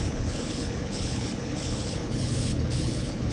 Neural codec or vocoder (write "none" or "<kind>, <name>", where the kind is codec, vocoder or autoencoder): codec, HILCodec